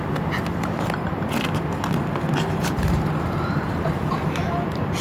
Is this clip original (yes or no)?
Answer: yes